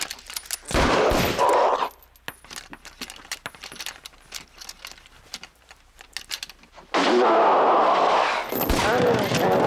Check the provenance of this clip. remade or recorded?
recorded